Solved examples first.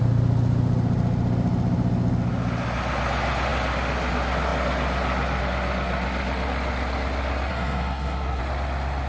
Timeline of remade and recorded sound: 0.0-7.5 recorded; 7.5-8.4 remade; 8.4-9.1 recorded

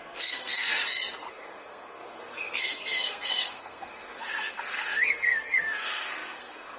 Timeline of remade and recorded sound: 0.0-0.8 remade; 0.8-1.3 recorded; 1.3-6.8 remade

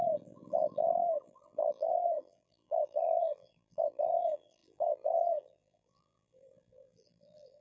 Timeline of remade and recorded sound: 0.0-7.6 remade

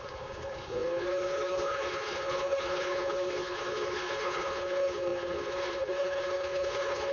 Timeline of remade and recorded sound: 0.0-7.1 remade

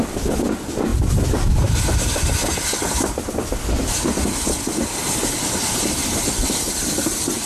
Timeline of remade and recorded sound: 0.0-7.5 recorded

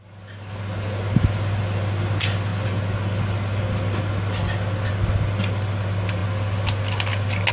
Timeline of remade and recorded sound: 0.0-7.5 recorded

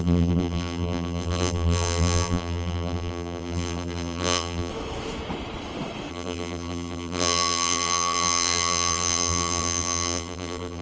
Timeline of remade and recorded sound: 0.0-4.7 remade; 4.7-6.1 recorded; 6.1-10.8 remade

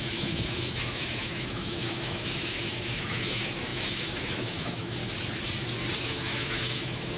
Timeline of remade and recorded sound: 0.0-5.0 remade; 5.0-6.0 recorded; 6.0-7.2 remade